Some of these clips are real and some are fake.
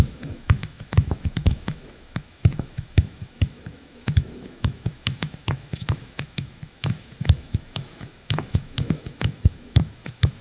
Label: fake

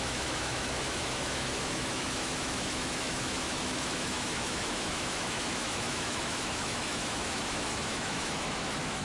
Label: fake